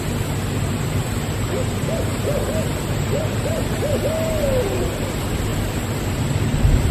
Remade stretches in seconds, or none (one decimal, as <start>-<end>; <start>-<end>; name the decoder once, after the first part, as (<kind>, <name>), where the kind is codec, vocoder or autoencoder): none